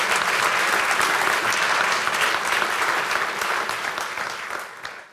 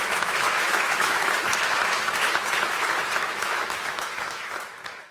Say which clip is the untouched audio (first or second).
first